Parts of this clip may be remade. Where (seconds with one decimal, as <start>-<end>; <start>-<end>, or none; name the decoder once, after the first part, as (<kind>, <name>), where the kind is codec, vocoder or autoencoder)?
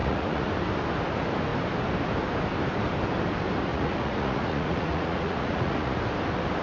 0.0-0.5 (vocoder, Vocos); 3.7-6.0